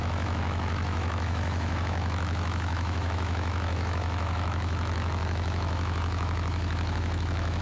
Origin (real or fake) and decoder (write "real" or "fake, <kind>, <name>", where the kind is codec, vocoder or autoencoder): fake, autoencoder, DAC-VAE